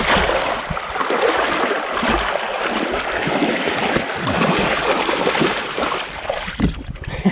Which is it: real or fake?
real